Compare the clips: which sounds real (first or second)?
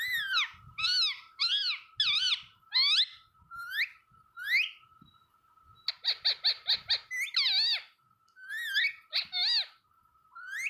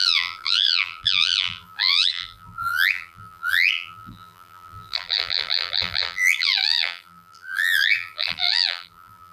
first